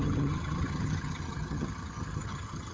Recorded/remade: remade